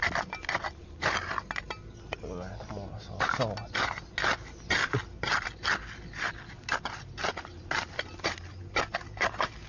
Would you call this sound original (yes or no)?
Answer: yes